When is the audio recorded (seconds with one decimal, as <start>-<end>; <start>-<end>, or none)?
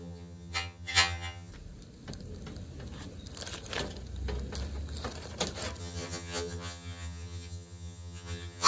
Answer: 1.5-5.8